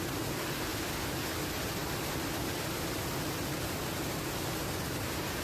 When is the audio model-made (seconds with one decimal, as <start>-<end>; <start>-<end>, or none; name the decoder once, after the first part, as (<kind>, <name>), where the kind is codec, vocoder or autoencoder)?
0.0-0.7 (vocoder, BigVGAN v2); 1.4-1.8; 3.3-5.4